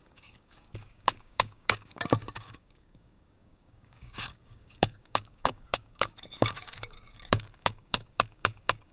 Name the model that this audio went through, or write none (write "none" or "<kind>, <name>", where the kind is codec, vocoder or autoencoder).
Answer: codec, DAC